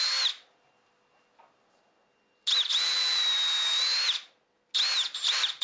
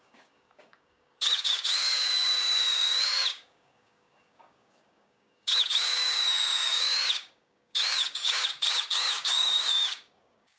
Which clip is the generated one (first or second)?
second